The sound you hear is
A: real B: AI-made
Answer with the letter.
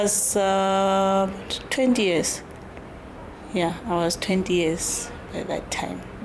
B